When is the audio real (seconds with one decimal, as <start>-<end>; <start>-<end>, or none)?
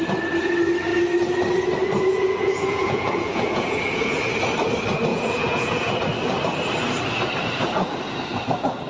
0.0-2.1; 4.2-5.1; 5.9-8.9